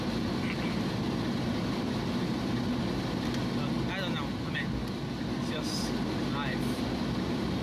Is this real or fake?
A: real